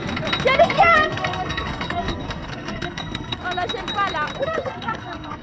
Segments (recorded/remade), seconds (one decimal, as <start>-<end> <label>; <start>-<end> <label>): 0.0-0.6 recorded; 0.6-3.4 remade; 3.4-4.4 recorded; 4.4-5.4 remade